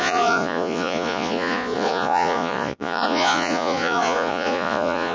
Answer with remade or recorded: remade